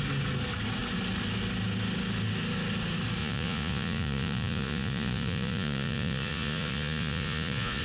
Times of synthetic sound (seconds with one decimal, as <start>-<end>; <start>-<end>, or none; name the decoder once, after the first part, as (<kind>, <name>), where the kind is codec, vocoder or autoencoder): 3.2-7.8 (vocoder, Vocos)